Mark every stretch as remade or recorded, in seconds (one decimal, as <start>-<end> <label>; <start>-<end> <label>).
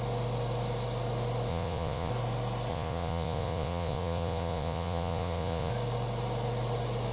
0.0-1.5 recorded; 1.5-2.1 remade; 2.1-2.7 recorded; 2.7-5.7 remade; 5.7-7.1 recorded